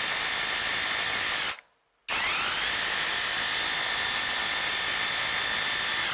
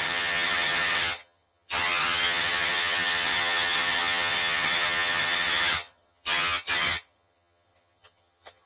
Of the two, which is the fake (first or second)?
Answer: second